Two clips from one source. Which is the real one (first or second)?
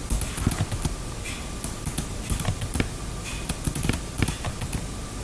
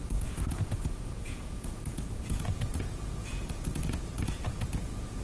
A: first